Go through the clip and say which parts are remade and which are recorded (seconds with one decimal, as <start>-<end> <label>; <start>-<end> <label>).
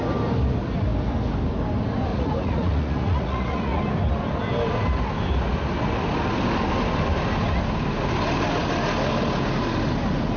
0.0-2.1 recorded; 2.1-3.8 remade; 3.8-10.4 recorded